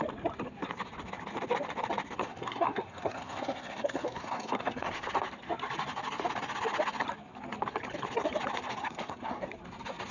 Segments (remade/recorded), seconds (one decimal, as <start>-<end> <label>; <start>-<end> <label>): 0.0-2.3 recorded; 2.3-5.1 remade; 5.1-8.8 recorded; 8.8-9.5 remade; 9.5-10.1 recorded